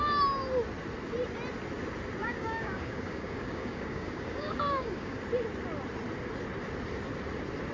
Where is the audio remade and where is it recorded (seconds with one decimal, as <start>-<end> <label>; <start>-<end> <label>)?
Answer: 0.0-2.2 recorded; 2.2-5.2 remade; 5.2-7.7 recorded